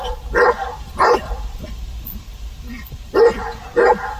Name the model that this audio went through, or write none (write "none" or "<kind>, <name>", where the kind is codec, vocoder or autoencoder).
vocoder, BigVGAN v2